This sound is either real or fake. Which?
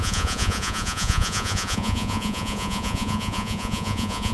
fake